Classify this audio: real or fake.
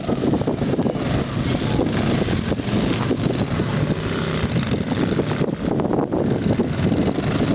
real